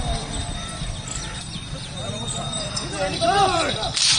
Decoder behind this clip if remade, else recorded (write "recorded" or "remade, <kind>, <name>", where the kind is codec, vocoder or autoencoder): remade, vocoder, BigVGAN v2